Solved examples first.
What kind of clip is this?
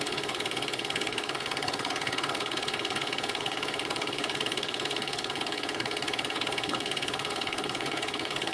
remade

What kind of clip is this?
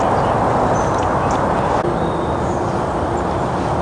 recorded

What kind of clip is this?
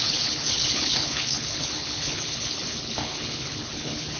remade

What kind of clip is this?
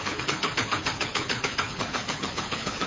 remade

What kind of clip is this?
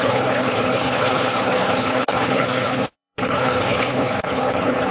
remade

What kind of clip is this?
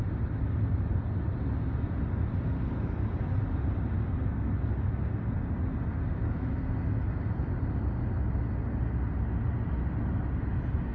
recorded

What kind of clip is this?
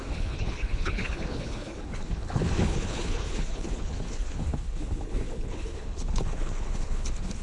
remade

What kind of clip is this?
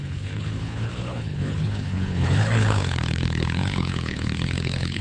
remade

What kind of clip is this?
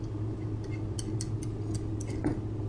recorded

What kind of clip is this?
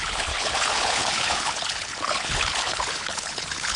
remade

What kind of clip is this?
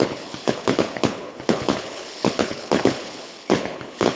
remade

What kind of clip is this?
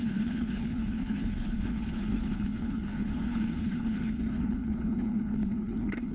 remade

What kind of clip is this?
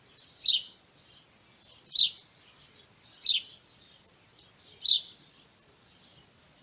recorded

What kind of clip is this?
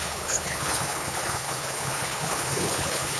remade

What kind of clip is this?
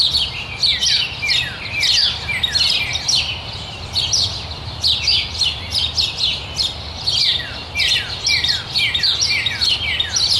recorded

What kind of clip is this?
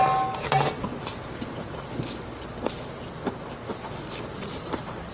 recorded